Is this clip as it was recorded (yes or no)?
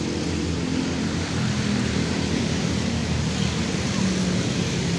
yes